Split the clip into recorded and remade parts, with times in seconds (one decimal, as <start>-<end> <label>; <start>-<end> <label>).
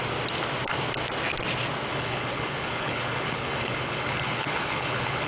0.0-1.9 recorded; 1.9-5.3 remade